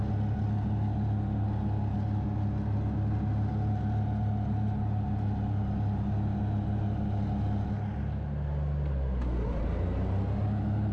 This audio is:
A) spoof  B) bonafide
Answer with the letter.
B